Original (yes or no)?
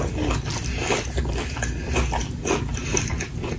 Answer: yes